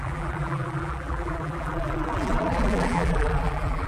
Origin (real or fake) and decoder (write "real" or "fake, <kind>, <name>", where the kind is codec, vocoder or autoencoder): fake, vocoder, BigVGAN v2